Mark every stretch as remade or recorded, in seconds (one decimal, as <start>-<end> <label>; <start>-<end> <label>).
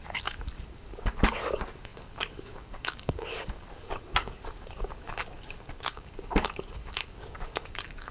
0.0-8.1 remade